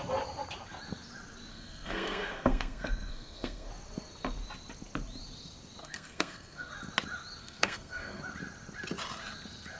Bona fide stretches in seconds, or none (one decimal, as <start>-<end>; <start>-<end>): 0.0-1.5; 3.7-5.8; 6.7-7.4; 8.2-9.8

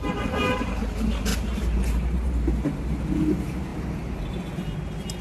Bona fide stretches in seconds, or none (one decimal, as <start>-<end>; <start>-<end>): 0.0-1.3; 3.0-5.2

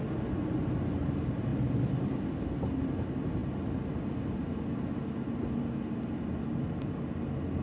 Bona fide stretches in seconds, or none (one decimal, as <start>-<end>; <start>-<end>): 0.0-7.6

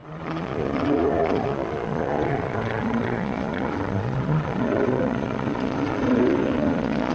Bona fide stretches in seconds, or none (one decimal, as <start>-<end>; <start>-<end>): none

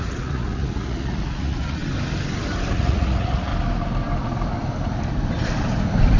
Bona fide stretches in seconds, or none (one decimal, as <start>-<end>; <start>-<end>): 1.8-2.7; 3.5-6.2

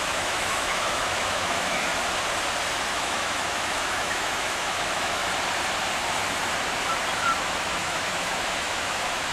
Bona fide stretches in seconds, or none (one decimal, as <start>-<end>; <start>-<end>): 1.9-2.9; 5.2-7.4

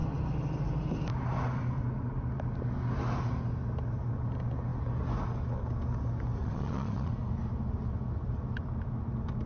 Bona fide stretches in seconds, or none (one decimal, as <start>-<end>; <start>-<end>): 0.0-6.4; 7.1-9.5

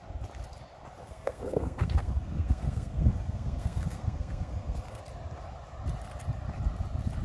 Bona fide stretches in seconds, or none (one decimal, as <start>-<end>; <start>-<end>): 0.0-1.0; 5.0-7.2